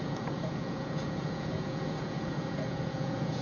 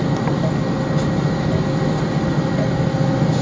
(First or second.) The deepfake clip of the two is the first